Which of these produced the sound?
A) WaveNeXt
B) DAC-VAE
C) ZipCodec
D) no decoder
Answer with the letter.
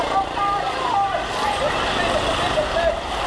D